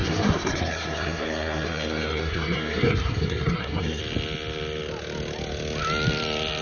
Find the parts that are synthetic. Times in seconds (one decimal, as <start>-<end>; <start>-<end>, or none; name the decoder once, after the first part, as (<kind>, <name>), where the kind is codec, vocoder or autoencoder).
0.0-4.0 (codec, SNAC)